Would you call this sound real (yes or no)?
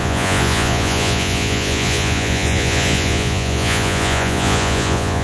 no